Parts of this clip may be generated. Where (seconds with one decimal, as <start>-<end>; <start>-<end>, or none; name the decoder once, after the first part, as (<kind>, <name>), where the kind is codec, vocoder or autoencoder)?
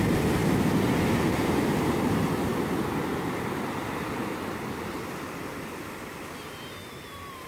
0.0-0.4 (vocoder, BigVGAN v2); 2.0-2.5; 6.9-7.5